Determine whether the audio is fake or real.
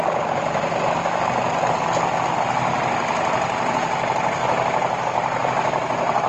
real